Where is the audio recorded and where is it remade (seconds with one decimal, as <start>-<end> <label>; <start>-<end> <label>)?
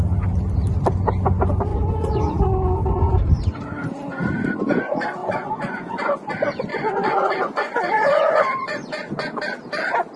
0.0-1.7 recorded; 1.7-2.4 remade; 2.4-5.2 recorded; 5.2-6.3 remade; 6.3-6.7 recorded; 6.7-9.4 remade; 9.4-10.2 recorded